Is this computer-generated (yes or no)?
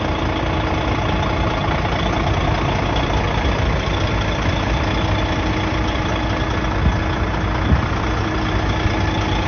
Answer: no